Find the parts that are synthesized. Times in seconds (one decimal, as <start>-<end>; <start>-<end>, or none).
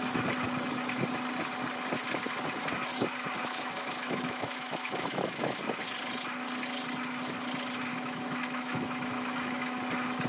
3.4-5.6; 7.9-9.8